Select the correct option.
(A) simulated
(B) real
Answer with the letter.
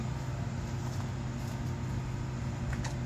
B